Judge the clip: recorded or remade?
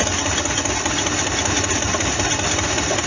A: recorded